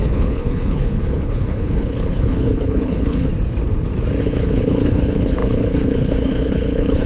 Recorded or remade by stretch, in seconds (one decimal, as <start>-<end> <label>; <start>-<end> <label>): 0.0-3.3 remade; 3.3-4.2 recorded; 4.2-7.1 remade